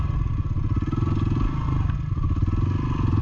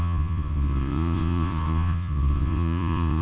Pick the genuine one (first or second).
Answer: first